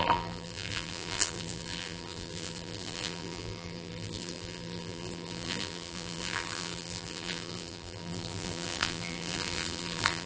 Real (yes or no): no